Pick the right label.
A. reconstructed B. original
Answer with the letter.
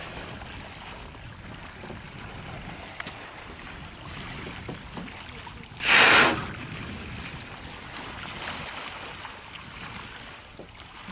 B